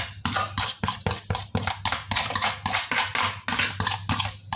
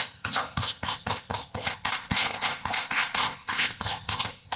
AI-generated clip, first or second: second